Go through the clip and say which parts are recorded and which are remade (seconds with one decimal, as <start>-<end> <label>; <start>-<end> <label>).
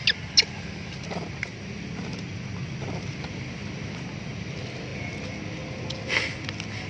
0.0-6.9 recorded